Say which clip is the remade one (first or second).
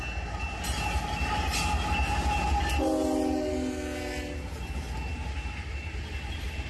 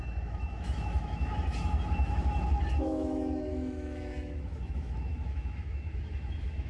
second